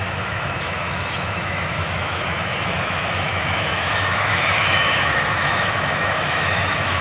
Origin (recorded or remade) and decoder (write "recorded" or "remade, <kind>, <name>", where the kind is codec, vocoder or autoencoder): remade, autoencoder, DAC-VAE